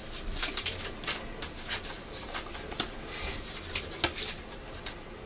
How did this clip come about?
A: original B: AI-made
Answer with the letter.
A